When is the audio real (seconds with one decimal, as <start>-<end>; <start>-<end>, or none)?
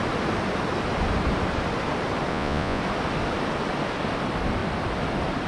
0.0-2.3; 2.8-5.5